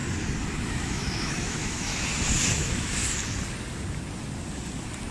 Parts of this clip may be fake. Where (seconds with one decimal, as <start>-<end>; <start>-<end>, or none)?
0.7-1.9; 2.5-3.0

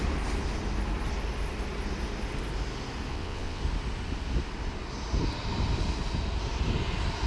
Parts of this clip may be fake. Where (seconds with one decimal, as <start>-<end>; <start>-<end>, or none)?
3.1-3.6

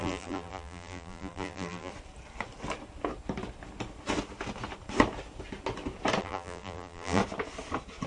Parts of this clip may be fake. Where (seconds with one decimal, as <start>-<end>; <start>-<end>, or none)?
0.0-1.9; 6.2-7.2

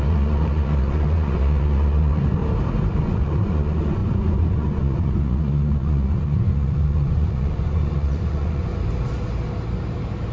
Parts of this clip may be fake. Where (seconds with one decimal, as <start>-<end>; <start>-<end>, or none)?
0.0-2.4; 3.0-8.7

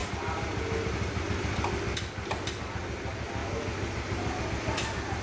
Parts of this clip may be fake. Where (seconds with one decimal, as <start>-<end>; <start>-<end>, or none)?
none

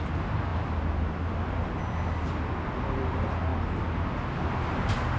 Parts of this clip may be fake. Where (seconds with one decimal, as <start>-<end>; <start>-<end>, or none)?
none